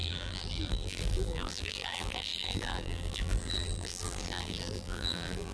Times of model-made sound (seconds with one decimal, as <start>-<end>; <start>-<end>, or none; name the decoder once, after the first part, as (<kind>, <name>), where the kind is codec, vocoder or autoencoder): 0.0-5.5 (vocoder, BigVGAN v2)